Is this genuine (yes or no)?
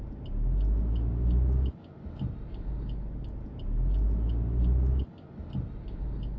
yes